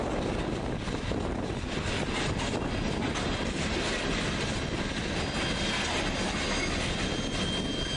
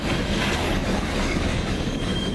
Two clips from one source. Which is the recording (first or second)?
first